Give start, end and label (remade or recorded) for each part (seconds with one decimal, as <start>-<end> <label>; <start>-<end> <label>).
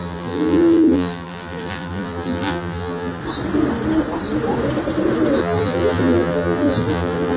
0.0-3.2 remade; 3.2-5.4 recorded; 5.4-7.4 remade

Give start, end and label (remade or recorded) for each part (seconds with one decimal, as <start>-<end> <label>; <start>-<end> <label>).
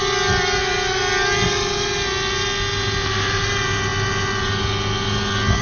0.0-5.6 recorded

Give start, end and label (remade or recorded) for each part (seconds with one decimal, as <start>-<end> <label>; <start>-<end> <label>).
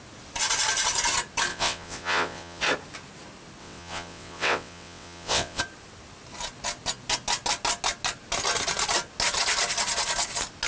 0.0-1.5 recorded; 1.5-2.6 remade; 2.6-3.6 recorded; 3.6-5.6 remade; 5.6-10.7 recorded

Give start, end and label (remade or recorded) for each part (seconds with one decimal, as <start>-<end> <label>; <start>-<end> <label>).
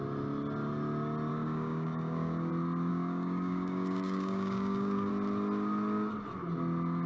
0.0-1.3 recorded; 1.3-2.5 remade; 2.5-2.9 recorded; 2.9-5.1 remade; 5.1-7.1 recorded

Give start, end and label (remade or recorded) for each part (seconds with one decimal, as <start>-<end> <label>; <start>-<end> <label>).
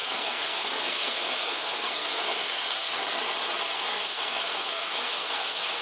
0.0-3.0 remade; 3.0-3.6 recorded; 3.6-5.8 remade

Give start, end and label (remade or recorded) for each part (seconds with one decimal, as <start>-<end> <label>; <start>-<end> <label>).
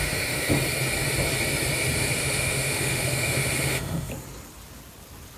0.0-0.5 remade; 0.5-2.2 recorded; 2.2-4.1 remade; 4.1-5.4 recorded